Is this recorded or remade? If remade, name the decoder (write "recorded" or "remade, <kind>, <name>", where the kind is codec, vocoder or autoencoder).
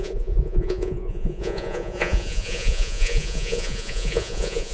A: remade, vocoder, Vocos